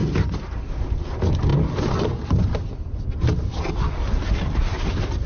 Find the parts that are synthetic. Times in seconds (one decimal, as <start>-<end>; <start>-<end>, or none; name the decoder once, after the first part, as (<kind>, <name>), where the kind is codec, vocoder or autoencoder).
none